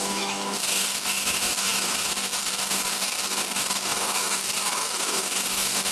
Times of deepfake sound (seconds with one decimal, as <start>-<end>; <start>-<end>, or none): 0.0-5.9